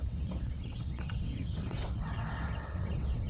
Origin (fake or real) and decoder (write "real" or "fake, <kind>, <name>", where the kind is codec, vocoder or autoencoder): fake, vocoder, WaveNeXt